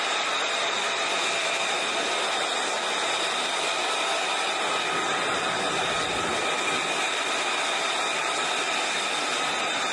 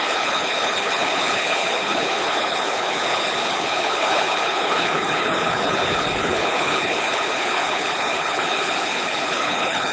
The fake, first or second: second